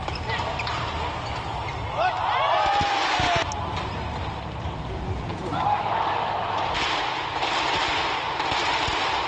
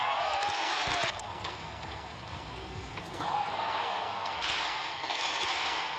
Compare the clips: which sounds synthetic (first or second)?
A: second